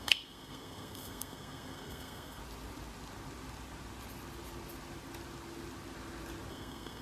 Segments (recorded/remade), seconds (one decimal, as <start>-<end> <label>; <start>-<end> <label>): 0.0-2.4 remade; 2.4-6.5 recorded; 6.5-7.0 remade